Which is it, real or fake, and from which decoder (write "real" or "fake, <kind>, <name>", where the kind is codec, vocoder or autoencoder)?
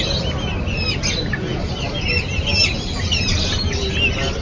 real